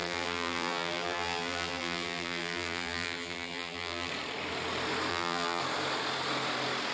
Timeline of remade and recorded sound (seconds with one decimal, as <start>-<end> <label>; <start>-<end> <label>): 0.0-4.1 remade; 4.1-5.1 recorded; 5.1-5.6 remade; 5.6-6.9 recorded